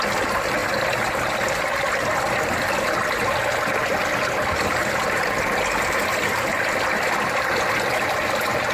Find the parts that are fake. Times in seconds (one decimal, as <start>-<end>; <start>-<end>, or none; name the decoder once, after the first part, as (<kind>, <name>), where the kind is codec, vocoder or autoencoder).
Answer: none